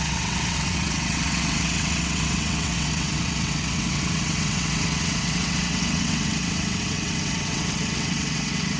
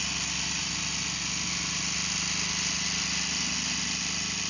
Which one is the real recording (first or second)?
second